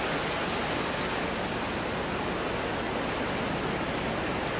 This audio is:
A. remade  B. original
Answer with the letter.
B